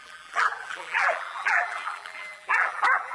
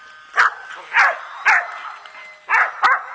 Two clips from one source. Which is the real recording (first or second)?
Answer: second